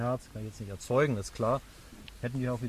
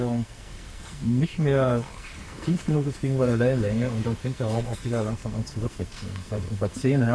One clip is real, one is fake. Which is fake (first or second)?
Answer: second